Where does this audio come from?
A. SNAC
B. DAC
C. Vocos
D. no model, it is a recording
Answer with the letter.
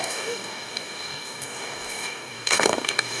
B